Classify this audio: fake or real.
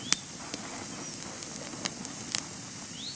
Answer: real